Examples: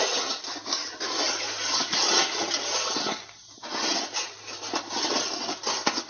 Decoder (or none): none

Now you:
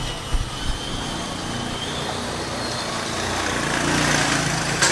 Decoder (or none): none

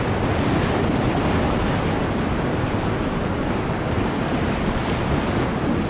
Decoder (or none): none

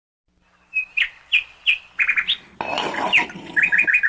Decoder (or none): none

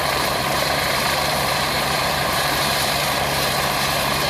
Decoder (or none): vocoder, BigVGAN v2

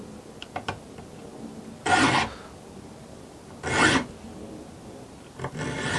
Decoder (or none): none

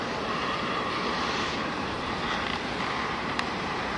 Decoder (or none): vocoder, BigVGAN v2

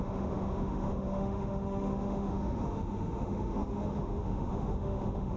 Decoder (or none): autoencoder, DAC-VAE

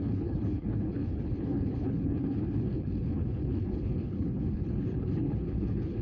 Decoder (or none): codec, HILCodec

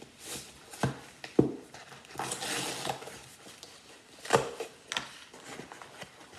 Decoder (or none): none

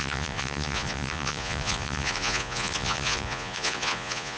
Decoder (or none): vocoder, Vocos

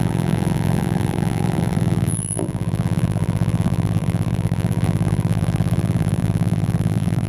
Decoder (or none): vocoder, BigVGAN v2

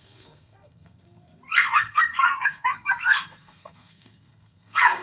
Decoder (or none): codec, SNAC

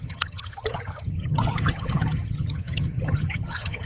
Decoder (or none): vocoder, HiFi-GAN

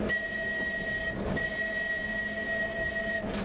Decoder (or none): none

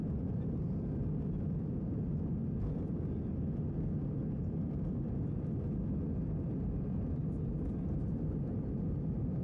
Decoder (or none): none